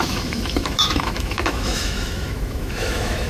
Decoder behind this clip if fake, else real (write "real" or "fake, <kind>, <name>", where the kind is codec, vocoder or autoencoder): fake, autoencoder, DAC-VAE